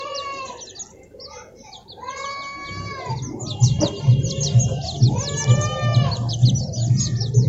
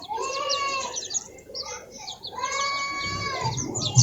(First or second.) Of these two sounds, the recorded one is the first